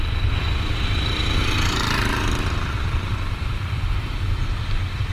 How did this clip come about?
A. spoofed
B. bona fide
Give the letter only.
B